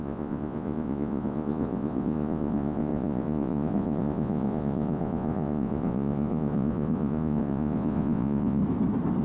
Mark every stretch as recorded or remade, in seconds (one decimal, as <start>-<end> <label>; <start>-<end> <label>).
0.0-8.6 remade; 8.6-9.2 recorded